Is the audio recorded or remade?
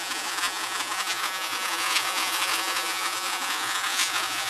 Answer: remade